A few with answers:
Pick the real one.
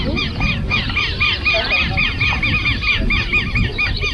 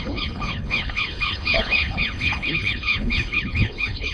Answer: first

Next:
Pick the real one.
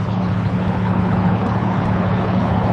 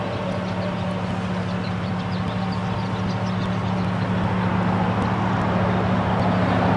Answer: second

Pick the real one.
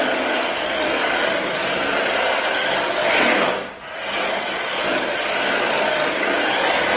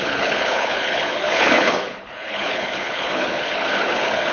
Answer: first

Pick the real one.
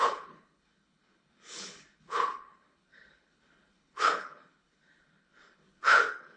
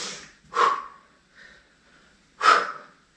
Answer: second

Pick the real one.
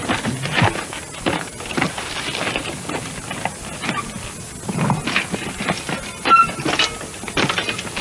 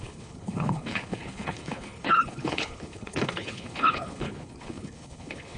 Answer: first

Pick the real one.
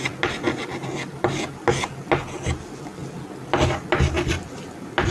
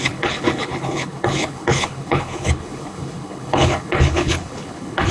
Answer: first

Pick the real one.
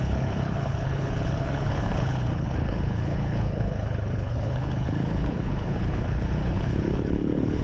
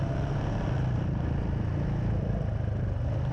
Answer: second